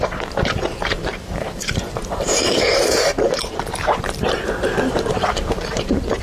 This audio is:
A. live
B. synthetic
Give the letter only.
B